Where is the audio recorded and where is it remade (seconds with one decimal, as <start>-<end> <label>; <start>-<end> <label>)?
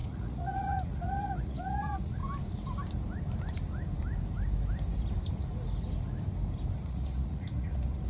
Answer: 0.0-2.2 remade; 2.2-6.9 recorded; 6.9-8.1 remade